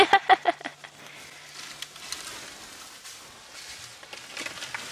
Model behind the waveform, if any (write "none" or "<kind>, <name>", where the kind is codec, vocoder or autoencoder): none